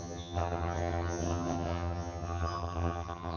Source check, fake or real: fake